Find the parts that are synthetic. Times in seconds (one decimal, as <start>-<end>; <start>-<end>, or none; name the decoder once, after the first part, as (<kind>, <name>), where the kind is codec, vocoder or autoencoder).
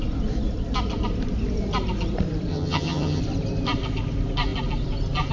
2.5-3.2 (vocoder, HiFi-GAN)